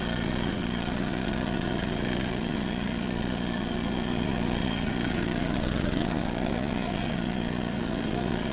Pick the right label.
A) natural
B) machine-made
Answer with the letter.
B